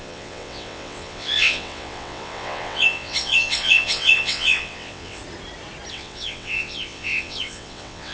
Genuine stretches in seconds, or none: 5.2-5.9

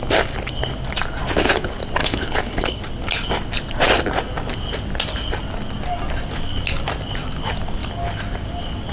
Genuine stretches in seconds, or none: 0.0-2.0; 2.8-8.9

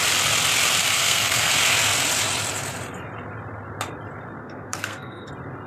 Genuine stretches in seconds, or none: 0.0-0.8; 1.5-4.4; 5.3-5.7

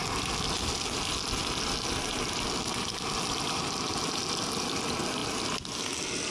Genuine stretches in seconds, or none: 0.0-6.3